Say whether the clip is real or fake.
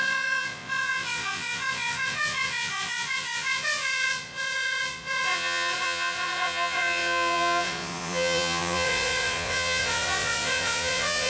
fake